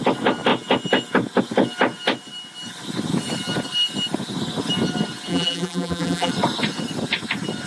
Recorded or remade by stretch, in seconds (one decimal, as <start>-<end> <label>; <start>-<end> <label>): 0.0-5.3 recorded; 5.3-6.3 remade; 6.3-7.7 recorded